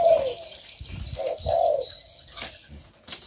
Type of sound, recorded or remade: recorded